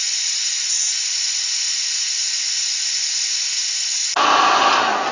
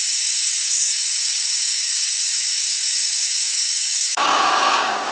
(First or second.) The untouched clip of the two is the first